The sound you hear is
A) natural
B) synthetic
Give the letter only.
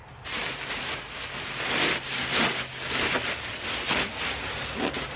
A